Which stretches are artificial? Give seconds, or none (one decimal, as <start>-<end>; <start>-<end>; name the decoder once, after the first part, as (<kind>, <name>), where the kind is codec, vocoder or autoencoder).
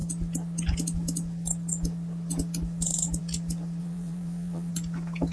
3.8-4.7 (vocoder, Vocos)